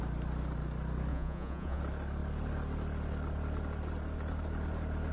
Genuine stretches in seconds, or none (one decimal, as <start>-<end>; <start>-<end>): 0.0-1.1; 1.8-5.1